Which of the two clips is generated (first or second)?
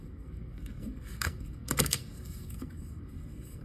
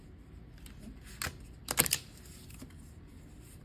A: first